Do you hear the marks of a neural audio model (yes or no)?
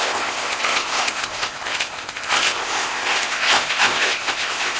yes